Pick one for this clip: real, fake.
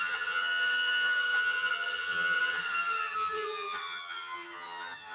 fake